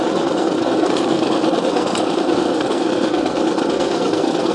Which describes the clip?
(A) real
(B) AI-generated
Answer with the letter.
B